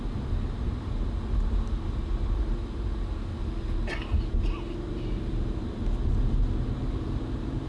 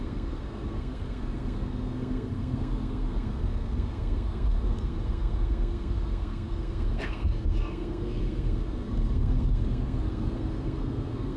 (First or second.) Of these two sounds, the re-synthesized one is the second